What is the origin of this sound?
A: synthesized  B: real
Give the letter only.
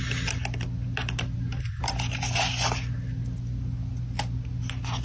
B